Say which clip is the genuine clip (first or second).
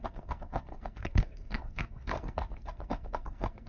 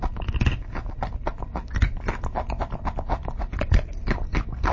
second